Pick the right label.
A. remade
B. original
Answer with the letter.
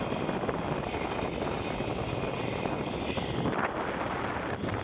B